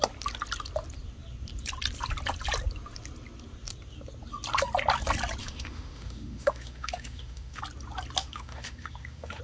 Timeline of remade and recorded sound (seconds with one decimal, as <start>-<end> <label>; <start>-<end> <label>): 0.0-5.4 recorded; 5.4-7.6 remade; 7.6-8.2 recorded; 8.2-9.4 remade